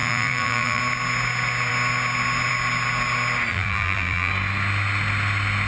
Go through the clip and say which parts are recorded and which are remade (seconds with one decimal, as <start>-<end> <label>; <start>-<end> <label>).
0.0-0.8 remade; 0.8-3.5 recorded; 3.5-4.3 remade; 4.3-5.7 recorded